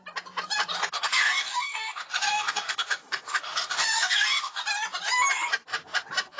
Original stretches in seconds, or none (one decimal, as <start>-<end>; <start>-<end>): 0.0-0.8; 4.6-6.4